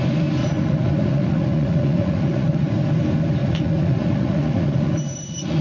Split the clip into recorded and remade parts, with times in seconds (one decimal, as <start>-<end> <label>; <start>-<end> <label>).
0.0-0.4 recorded; 0.4-2.7 remade; 2.7-3.4 recorded; 3.4-5.6 remade